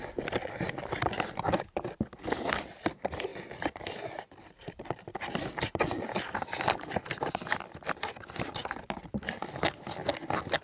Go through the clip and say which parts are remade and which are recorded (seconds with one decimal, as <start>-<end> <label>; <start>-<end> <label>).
0.0-10.6 recorded